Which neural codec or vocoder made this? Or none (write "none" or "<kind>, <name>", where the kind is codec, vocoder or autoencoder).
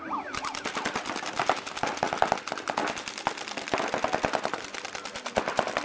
none